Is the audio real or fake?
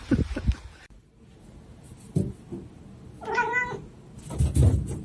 real